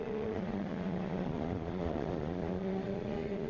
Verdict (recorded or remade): remade